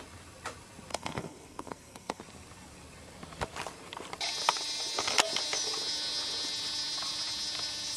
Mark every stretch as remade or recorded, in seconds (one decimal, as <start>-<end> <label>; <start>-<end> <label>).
0.0-0.9 recorded; 0.9-2.2 remade; 2.2-8.0 recorded